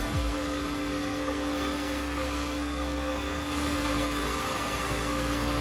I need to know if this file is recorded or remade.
remade